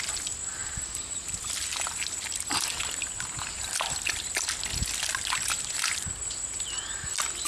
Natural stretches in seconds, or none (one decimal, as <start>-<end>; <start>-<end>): 0.0-7.5